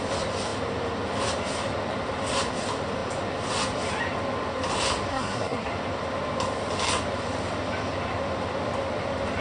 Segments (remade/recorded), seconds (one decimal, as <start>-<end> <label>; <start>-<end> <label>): 0.0-5.1 recorded; 5.1-5.7 remade; 5.7-9.4 recorded